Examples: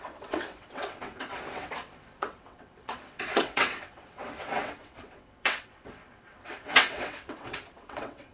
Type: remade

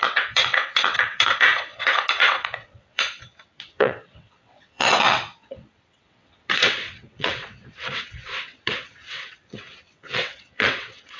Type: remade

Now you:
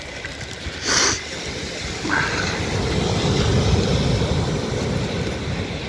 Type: recorded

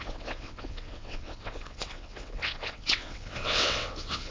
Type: remade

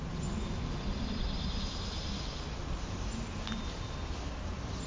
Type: recorded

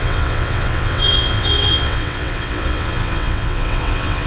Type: remade